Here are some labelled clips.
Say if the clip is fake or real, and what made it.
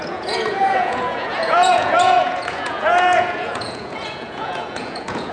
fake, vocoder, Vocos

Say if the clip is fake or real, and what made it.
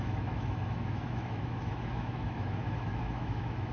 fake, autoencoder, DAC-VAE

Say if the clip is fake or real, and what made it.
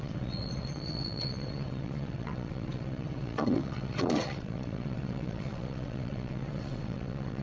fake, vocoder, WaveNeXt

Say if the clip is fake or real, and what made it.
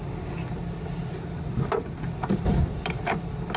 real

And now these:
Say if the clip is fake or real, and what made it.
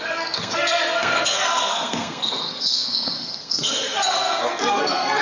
fake, codec, SNAC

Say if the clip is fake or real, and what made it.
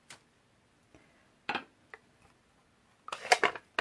real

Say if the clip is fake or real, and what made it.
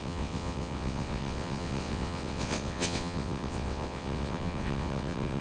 fake, vocoder, WaveNeXt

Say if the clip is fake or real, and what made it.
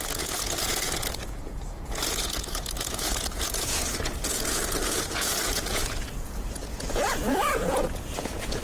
fake, vocoder, Vocos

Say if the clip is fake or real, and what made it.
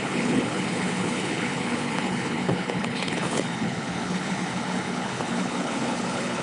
fake, codec, HILCodec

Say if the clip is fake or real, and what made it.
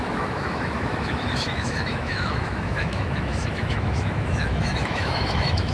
fake, autoencoder, DAC-VAE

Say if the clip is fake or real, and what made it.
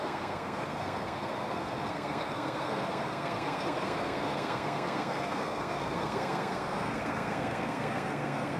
fake, codec, SNAC